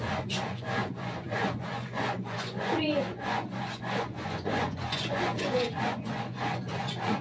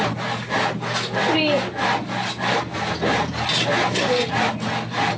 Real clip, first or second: second